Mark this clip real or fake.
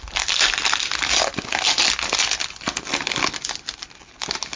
real